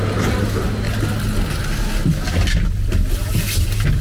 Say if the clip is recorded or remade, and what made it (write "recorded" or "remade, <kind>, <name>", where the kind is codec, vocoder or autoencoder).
recorded